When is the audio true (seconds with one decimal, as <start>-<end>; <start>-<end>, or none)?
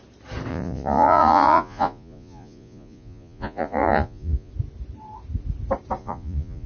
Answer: 0.0-0.5; 4.5-6.0